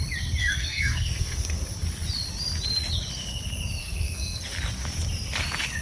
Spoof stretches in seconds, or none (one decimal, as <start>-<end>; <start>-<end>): 0.4-1.6; 3.8-4.4